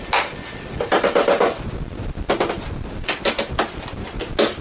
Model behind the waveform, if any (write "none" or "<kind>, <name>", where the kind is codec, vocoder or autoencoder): none